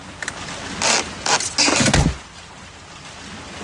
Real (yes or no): yes